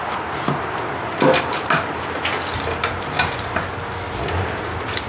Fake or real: real